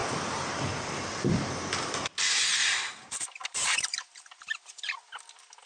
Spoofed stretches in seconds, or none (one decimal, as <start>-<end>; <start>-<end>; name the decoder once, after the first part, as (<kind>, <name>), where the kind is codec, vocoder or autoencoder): 2.6-5.0 (vocoder, BigVGAN v2)